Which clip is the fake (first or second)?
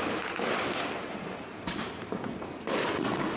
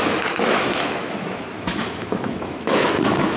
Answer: second